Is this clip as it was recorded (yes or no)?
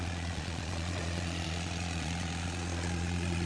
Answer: no